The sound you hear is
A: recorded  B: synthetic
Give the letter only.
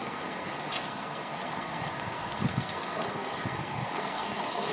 B